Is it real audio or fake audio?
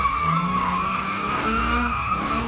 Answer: fake